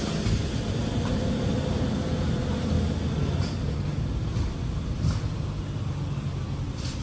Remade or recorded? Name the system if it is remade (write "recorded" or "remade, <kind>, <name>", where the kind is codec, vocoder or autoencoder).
recorded